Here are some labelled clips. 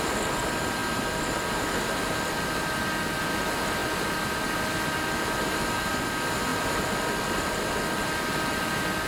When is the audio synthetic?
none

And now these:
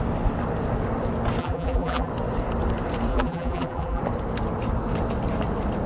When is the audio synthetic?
1.4-2.1 (vocoder, BigVGAN v2); 3.1-4.0

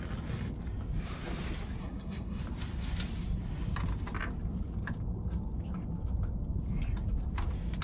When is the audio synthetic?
1.8-2.4 (codec, SNAC)

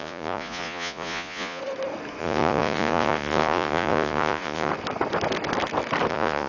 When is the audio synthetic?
0.0-1.6 (vocoder, Vocos); 2.2-4.7; 6.1-6.5

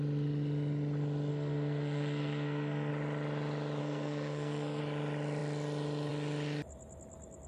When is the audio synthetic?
1.3-2.9 (codec, SNAC); 3.8-4.8